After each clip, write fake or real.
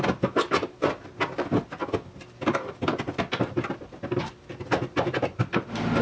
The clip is real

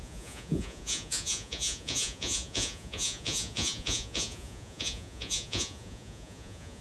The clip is fake